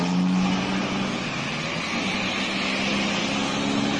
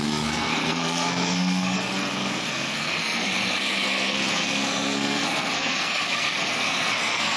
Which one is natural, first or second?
first